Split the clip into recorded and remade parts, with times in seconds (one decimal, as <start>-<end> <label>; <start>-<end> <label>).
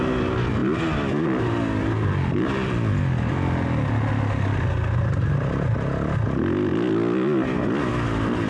0.0-8.5 recorded